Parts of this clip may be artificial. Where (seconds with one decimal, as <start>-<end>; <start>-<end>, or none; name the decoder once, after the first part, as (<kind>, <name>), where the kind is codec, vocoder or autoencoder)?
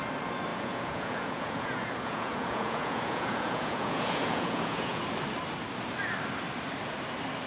0.5-5.0 (vocoder, Vocos)